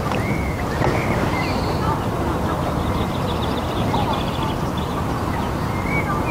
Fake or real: real